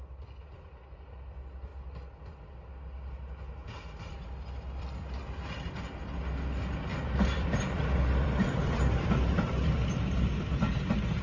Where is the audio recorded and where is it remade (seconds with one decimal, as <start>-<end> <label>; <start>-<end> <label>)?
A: 0.0-6.9 recorded; 6.9-11.2 remade